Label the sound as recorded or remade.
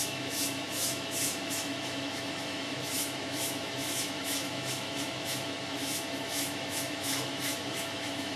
remade